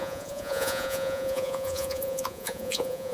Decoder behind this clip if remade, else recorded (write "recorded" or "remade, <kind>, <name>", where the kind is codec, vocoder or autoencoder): remade, vocoder, Vocos